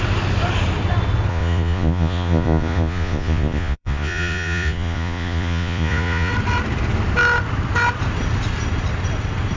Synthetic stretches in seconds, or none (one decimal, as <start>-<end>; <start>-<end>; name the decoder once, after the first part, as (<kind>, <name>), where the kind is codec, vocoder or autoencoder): 1.3-6.3 (vocoder, Vocos)